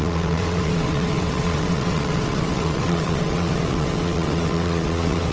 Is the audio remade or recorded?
remade